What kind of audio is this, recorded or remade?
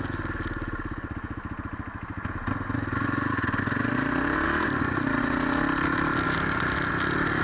recorded